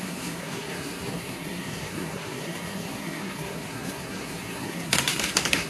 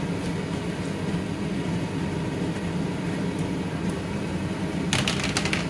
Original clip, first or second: second